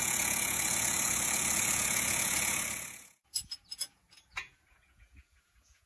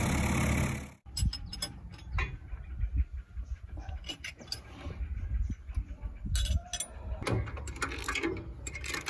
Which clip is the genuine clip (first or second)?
second